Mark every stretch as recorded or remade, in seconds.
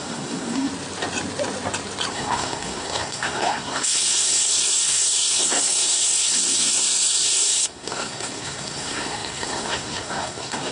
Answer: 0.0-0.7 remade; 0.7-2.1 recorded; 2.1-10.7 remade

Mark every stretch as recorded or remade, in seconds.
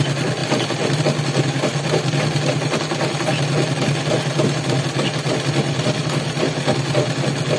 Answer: 0.0-7.6 recorded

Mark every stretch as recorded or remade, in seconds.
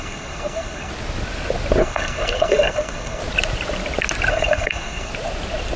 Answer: 0.0-0.9 remade; 0.9-1.8 recorded; 1.8-3.2 remade; 3.2-4.3 recorded; 4.3-5.1 remade; 5.1-5.8 recorded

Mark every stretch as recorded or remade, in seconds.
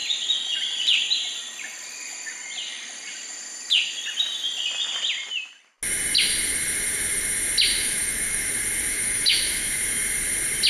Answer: 0.0-7.7 recorded; 7.7-8.5 remade; 8.5-8.9 recorded; 8.9-9.7 remade; 9.7-10.7 recorded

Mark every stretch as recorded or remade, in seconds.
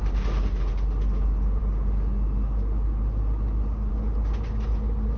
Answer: 0.0-5.2 recorded